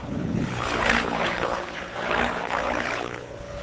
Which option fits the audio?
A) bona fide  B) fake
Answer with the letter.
B